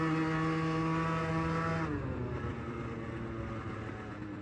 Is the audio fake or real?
real